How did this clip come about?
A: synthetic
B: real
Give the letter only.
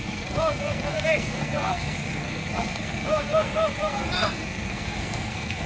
A